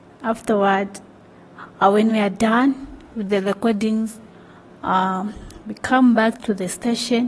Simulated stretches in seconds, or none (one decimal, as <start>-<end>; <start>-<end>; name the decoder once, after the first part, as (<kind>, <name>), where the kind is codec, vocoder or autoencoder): 2.8-4.3 (autoencoder, DAC-VAE); 5.9-6.5